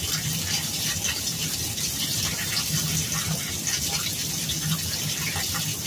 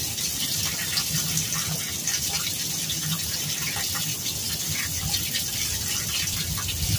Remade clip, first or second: second